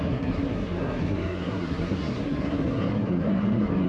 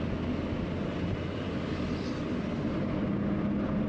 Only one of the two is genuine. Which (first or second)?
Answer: second